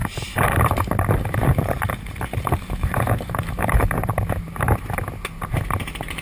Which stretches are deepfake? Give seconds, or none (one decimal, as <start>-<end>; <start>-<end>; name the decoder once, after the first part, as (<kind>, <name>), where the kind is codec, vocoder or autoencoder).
0.0-0.8 (vocoder, BigVGAN v2); 1.5-5.0